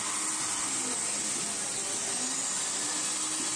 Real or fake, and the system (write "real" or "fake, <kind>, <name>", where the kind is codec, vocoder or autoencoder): real